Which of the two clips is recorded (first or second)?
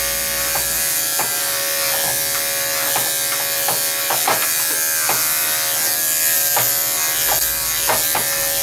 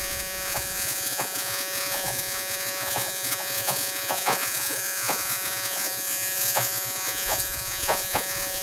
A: first